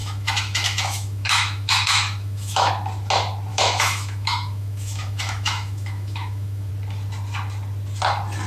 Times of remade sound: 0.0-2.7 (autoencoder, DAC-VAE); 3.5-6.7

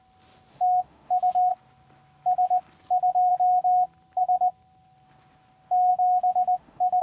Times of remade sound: 0.5-1.5 (autoencoder, DAC-VAE); 5.9-7.0

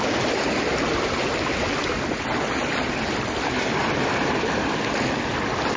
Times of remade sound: none

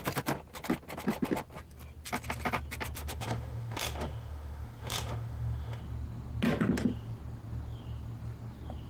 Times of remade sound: 3.0-5.8 (autoencoder, DAC-VAE)

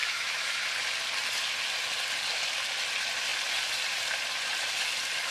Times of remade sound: 0.0-0.6 (autoencoder, DAC-VAE)